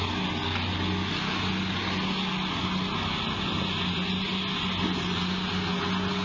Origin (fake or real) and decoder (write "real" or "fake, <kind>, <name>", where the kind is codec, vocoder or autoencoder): real